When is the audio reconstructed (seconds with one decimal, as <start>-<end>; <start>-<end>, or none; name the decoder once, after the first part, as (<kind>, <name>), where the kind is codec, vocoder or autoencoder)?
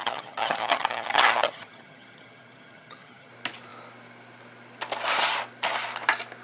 0.0-3.3 (vocoder, HiFi-GAN)